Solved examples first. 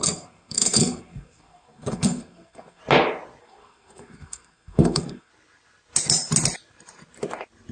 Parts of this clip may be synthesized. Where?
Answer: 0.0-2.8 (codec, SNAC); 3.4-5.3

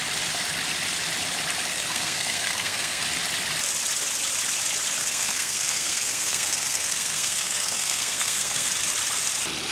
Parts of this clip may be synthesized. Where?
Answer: 1.7-3.0 (codec, SNAC); 5.0-8.7

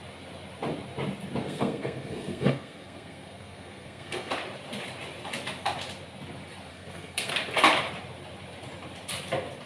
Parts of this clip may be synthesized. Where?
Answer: 1.4-4.3 (codec, SNAC); 6.7-7.3